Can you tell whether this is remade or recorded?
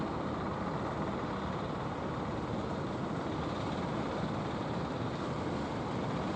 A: recorded